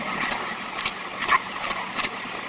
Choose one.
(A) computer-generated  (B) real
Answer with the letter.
B